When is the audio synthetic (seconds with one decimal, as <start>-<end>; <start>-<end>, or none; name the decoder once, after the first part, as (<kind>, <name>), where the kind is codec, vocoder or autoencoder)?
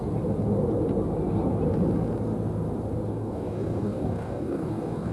3.1-5.1 (codec, DAC)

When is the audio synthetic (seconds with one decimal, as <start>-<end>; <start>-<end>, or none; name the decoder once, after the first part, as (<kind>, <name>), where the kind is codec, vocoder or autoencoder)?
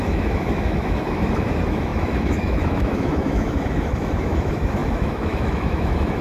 0.0-6.2 (autoencoder, DAC-VAE)